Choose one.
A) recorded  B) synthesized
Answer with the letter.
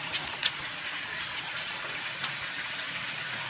B